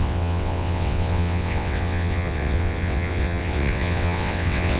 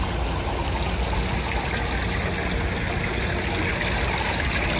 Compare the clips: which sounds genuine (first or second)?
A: second